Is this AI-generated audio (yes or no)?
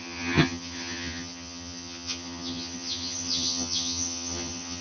yes